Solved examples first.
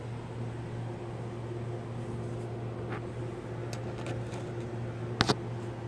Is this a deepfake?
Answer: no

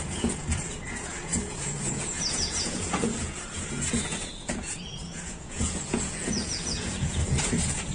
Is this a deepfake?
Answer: yes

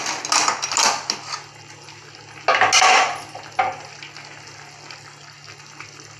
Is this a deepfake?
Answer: no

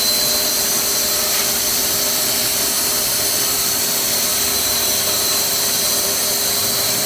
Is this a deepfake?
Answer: yes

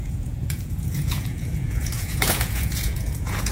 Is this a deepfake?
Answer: yes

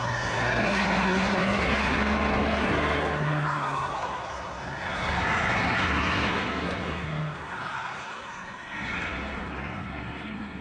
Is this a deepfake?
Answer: yes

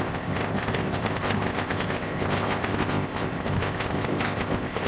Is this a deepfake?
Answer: yes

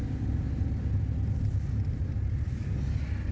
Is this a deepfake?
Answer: no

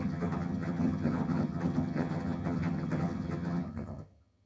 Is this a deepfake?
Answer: yes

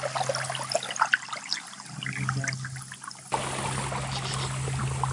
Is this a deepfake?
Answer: no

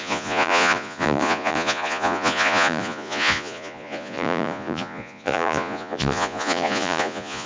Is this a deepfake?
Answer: yes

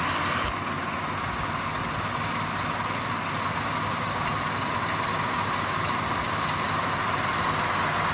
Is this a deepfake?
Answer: no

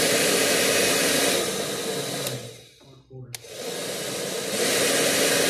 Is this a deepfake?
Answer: no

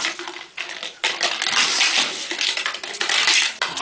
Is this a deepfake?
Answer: no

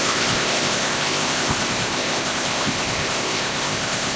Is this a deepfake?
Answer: yes